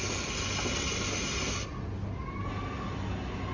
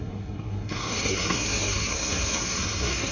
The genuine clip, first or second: first